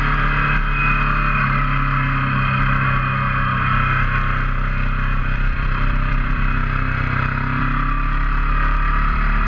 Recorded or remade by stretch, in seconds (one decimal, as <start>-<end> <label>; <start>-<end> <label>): 0.0-0.8 remade; 0.8-5.2 recorded; 5.2-9.5 remade